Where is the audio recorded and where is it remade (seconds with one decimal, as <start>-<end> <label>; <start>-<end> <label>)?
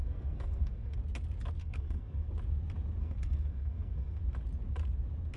0.0-1.0 remade; 1.0-1.6 recorded; 1.6-2.3 remade; 2.3-3.0 recorded; 3.0-4.2 remade; 4.2-5.4 recorded